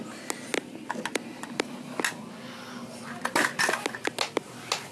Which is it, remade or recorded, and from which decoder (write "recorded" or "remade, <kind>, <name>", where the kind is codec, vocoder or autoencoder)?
recorded